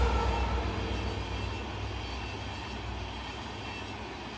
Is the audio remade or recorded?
recorded